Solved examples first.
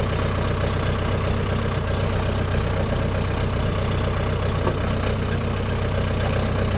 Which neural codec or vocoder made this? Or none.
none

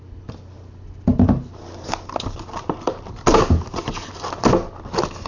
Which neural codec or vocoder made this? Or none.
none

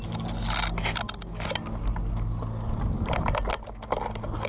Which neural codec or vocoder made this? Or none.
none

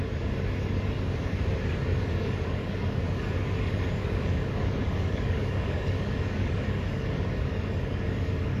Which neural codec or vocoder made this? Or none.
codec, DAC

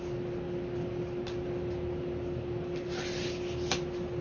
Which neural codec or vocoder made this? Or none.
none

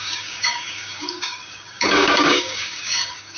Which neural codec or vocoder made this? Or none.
codec, DAC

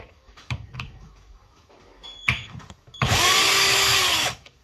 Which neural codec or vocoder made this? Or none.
codec, DAC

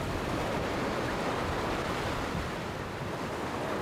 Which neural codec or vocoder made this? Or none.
none